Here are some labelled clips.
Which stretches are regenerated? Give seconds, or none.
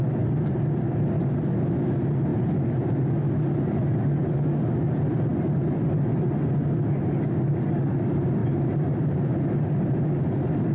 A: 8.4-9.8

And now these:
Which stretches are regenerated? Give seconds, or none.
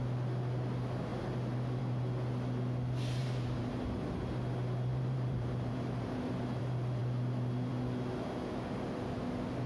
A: 3.2-3.8; 4.9-6.6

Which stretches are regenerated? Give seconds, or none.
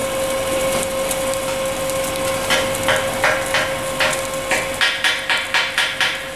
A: none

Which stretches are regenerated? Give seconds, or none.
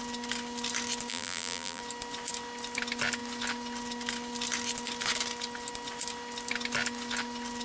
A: 1.1-1.8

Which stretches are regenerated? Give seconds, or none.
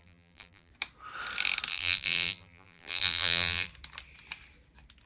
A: 0.0-0.7; 1.7-3.7